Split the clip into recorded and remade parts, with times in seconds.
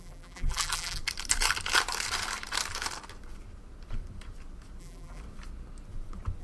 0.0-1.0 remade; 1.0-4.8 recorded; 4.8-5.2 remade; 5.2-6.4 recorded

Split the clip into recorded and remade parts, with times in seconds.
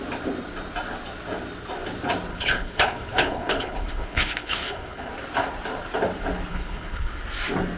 0.0-2.3 recorded; 2.3-5.1 remade; 5.1-6.5 recorded; 6.5-7.1 remade; 7.1-7.8 recorded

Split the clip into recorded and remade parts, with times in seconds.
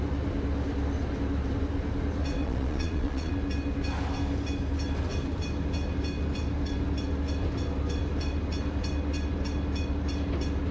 0.0-2.4 recorded; 2.4-3.3 remade; 3.3-10.7 recorded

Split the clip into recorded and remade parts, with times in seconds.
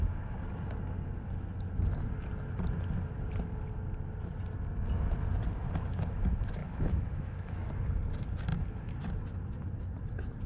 0.0-6.6 recorded; 6.6-7.7 remade; 7.7-10.5 recorded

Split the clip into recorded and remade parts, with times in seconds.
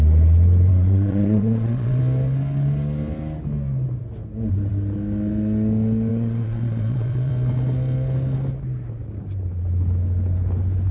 0.0-0.7 recorded; 0.7-2.0 remade; 2.0-6.1 recorded; 6.1-7.3 remade; 7.3-10.9 recorded